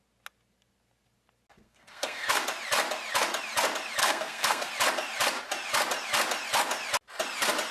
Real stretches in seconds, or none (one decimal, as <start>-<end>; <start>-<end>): 0.0-1.5; 2.4-4.0; 4.7-7.7